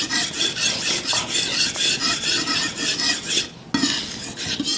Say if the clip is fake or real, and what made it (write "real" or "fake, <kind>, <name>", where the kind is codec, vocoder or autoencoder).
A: real